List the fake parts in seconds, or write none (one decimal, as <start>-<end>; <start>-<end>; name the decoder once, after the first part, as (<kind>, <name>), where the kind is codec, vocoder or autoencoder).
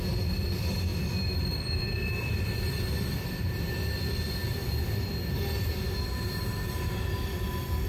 none